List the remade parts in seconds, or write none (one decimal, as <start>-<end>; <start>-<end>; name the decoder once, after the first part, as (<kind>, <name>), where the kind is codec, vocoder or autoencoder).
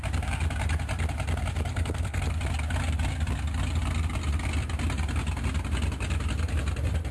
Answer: 1.7-2.2 (codec, SNAC)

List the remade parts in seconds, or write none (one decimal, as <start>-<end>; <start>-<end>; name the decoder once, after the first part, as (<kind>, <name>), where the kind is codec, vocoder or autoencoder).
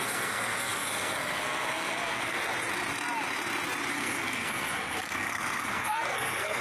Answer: 0.0-2.4 (codec, SNAC); 3.9-6.6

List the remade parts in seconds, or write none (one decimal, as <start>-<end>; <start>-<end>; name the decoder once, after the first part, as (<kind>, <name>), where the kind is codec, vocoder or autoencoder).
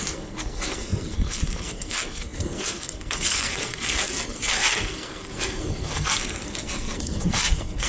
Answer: 0.0-7.9 (codec, SNAC)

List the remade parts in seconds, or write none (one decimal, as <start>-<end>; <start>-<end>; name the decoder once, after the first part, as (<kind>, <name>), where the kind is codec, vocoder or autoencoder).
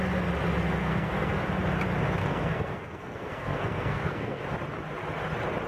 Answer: 0.8-1.4 (codec, SNAC); 2.2-4.4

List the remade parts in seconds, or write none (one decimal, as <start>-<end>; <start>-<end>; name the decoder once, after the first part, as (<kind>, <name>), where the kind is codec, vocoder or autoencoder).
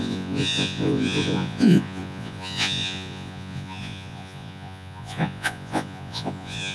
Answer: 0.0-6.7 (vocoder, Vocos)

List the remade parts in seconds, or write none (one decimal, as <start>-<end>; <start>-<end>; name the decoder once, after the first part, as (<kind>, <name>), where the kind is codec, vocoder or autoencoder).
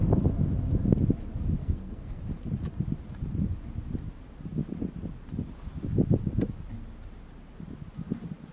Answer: 1.6-2.2 (codec, SNAC)